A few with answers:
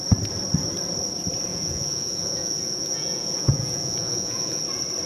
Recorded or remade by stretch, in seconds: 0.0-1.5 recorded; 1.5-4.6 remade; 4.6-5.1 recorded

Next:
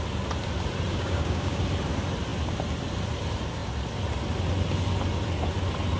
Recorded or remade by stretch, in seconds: 0.0-0.9 recorded; 0.9-1.6 remade; 1.6-6.0 recorded

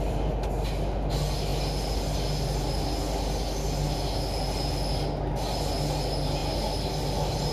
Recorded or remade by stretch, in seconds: 0.0-7.5 recorded

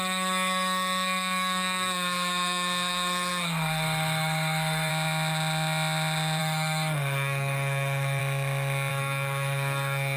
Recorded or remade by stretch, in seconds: 0.0-4.9 remade; 4.9-6.4 recorded; 6.4-8.2 remade; 8.2-8.9 recorded; 8.9-10.2 remade